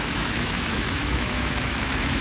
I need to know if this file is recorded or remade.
remade